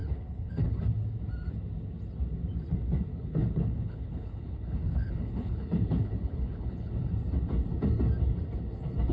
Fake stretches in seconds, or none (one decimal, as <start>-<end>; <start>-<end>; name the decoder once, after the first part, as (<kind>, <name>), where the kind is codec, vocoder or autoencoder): 0.0-0.8 (codec, HILCodec); 3.1-6.9